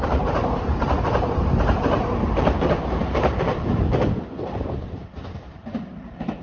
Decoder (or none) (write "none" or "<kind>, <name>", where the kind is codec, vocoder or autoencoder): vocoder, BigVGAN v2